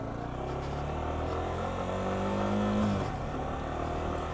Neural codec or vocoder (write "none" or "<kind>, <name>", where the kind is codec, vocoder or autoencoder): none